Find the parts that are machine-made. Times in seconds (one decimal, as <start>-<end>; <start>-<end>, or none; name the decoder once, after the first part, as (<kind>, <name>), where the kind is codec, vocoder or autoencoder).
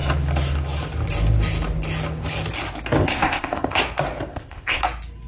3.0-3.8 (codec, ZipCodec); 4.3-4.8